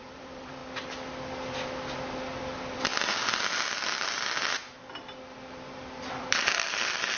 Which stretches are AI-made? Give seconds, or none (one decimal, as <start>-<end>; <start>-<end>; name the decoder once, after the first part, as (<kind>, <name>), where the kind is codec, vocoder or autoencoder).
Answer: 0.0-0.6 (vocoder, BigVGAN v2); 2.4-2.9; 5.5-7.2

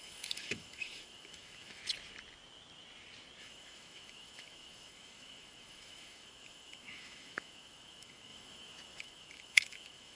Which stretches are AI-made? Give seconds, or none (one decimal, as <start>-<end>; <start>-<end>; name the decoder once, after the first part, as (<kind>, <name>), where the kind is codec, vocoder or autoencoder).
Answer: 0.0-1.8 (autoencoder, DAC-VAE); 3.4-10.2